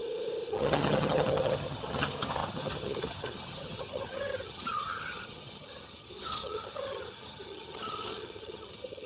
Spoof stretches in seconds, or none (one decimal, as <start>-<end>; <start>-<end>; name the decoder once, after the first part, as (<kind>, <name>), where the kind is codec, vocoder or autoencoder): 0.5-9.1 (vocoder, HiFi-GAN)